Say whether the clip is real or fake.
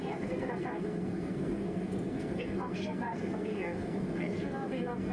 fake